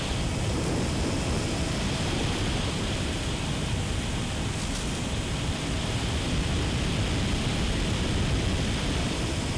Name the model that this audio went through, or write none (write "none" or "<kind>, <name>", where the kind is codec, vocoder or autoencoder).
none